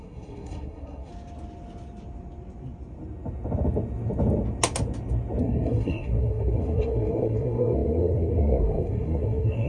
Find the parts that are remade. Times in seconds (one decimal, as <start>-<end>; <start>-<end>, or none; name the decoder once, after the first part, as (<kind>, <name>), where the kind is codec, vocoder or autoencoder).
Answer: 0.0-1.1 (codec, SNAC); 5.4-9.7